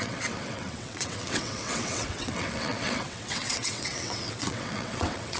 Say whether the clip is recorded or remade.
remade